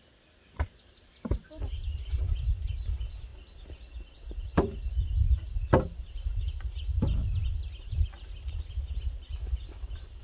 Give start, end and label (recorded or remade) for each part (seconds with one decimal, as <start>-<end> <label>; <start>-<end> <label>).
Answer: 0.0-10.2 remade